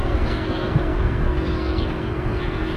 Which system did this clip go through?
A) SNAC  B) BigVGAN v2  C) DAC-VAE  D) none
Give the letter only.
A